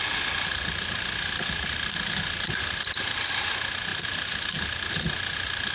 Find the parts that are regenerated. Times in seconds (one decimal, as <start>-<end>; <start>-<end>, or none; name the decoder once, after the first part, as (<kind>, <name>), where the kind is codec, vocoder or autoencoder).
none